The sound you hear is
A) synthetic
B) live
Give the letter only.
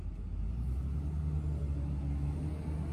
B